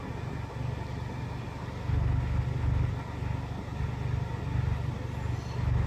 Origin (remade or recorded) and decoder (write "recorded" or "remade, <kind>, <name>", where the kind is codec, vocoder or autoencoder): recorded